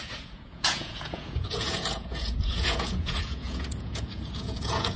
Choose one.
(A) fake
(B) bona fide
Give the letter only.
A